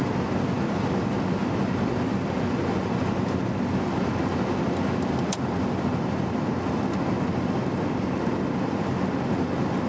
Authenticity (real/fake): real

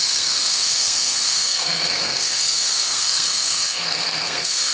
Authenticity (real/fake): fake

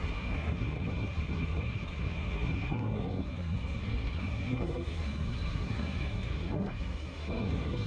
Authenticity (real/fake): fake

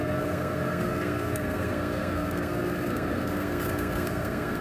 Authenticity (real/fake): fake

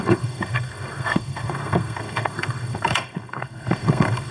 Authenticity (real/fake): fake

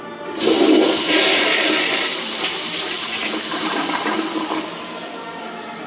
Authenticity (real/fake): real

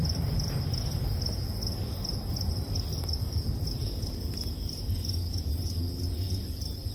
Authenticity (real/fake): real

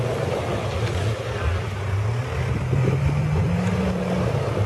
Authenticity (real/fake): real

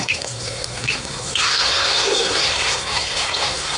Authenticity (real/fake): fake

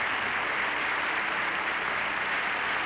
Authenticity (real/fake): real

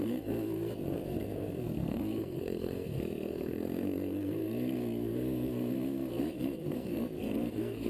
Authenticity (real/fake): fake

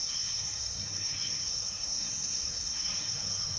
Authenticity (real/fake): fake